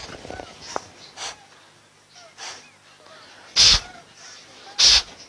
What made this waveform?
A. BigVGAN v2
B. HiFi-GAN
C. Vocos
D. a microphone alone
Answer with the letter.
D